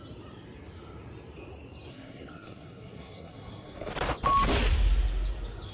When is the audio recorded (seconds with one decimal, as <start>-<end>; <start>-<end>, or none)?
0.0-1.9; 3.9-5.7